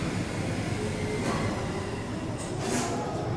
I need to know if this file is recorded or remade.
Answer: recorded